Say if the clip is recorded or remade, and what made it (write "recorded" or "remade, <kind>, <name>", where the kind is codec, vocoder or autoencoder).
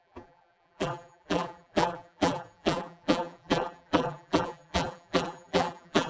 remade, vocoder, BigVGAN v2